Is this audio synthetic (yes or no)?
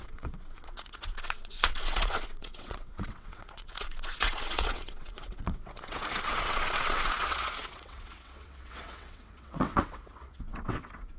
yes